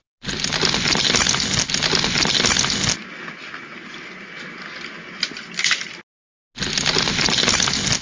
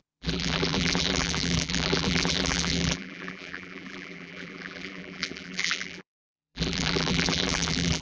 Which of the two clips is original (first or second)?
first